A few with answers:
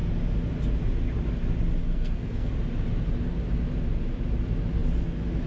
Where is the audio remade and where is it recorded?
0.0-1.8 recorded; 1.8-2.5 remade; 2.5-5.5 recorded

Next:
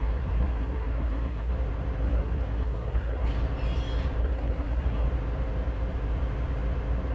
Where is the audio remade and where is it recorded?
0.0-1.5 remade; 1.5-2.0 recorded; 2.0-3.3 remade; 3.3-4.2 recorded; 4.2-5.1 remade; 5.1-7.1 recorded

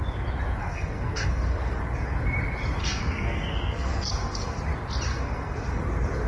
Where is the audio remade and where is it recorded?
0.0-0.6 recorded; 0.6-1.8 remade; 1.8-2.8 recorded; 2.8-4.6 remade; 4.6-5.1 recorded; 5.1-5.8 remade; 5.8-6.3 recorded

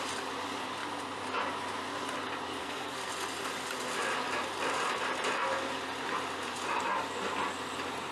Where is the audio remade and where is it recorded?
0.0-2.6 recorded; 2.6-3.1 remade; 3.1-8.1 recorded

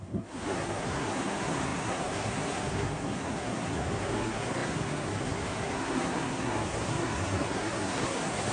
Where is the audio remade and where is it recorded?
0.0-8.5 remade